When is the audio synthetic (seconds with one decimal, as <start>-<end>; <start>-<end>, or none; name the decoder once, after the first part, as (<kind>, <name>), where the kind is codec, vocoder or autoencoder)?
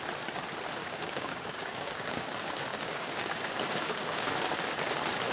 0.8-2.2 (codec, DAC); 2.7-4.3